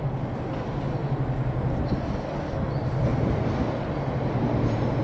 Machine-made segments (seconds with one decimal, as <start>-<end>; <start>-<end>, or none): none